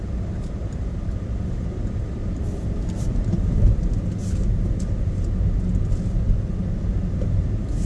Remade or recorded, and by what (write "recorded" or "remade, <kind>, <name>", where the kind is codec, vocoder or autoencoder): recorded